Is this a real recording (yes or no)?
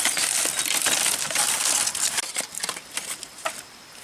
yes